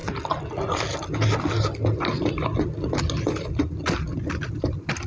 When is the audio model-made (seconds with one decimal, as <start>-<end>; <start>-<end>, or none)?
none